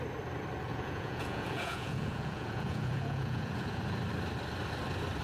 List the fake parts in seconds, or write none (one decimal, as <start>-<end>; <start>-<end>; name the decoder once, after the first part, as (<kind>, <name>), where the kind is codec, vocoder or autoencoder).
0.7-3.8 (vocoder, Vocos)